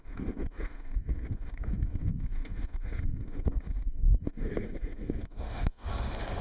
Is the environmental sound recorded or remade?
remade